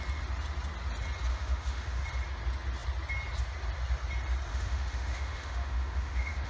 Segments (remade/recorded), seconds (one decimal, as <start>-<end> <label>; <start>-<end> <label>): 0.0-1.3 recorded; 1.3-2.0 remade; 2.0-4.5 recorded; 4.5-6.5 remade